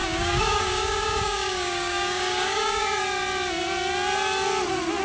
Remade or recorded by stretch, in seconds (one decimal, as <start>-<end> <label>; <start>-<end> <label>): 0.0-3.0 remade; 3.0-5.0 recorded